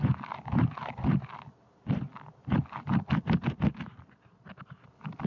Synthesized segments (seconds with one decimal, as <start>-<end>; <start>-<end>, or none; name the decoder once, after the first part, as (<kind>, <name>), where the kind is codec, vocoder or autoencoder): none